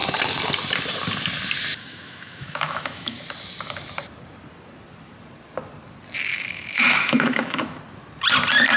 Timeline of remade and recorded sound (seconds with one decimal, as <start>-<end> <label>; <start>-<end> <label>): 0.0-1.8 recorded; 1.8-3.2 remade; 3.2-6.3 recorded; 6.3-7.8 remade; 7.8-8.8 recorded